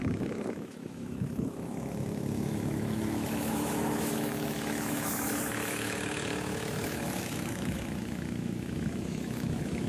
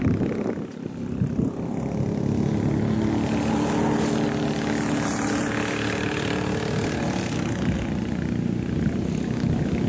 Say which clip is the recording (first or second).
second